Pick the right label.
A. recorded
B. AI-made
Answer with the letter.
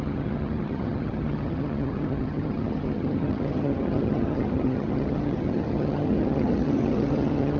B